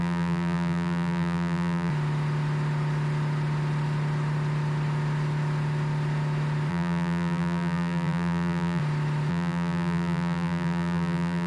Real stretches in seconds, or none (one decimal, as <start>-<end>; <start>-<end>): 1.9-6.7; 8.8-9.3